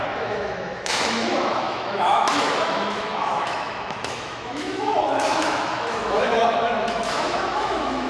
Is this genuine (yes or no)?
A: no